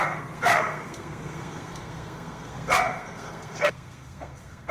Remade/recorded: remade